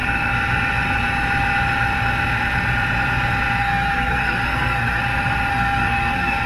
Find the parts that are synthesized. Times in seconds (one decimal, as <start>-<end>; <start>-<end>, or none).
3.6-5.0; 5.5-6.5